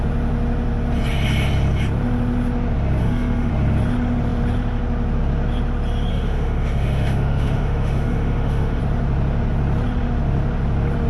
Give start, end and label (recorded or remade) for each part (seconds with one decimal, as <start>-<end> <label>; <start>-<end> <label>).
0.0-3.0 recorded; 3.0-3.5 remade; 3.5-6.1 recorded; 6.1-8.8 remade; 8.8-11.1 recorded